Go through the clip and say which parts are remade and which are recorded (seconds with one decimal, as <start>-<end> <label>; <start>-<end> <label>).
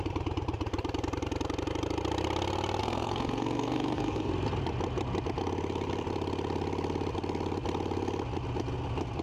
0.0-2.8 recorded; 2.8-4.3 remade; 4.3-9.2 recorded